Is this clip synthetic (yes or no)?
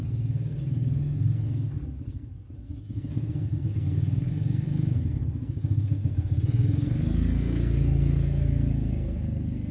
yes